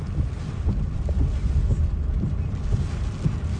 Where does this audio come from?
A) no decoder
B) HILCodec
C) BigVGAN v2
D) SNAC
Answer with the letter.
A